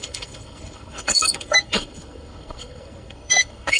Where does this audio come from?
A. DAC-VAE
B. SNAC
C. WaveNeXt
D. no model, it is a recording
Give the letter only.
B